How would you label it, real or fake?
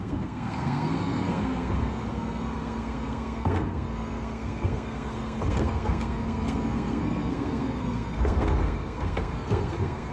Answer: fake